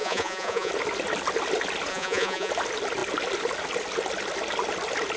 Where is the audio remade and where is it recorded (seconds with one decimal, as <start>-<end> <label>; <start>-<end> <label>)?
0.0-0.7 remade; 0.7-1.9 recorded; 1.9-2.5 remade; 2.5-5.2 recorded